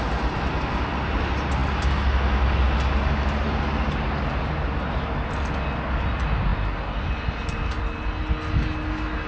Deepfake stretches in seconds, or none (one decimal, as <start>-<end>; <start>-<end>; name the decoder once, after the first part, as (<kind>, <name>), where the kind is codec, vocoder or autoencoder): none